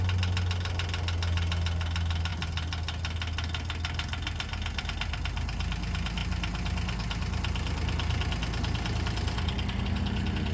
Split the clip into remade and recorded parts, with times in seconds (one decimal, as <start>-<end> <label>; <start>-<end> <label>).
0.0-10.5 recorded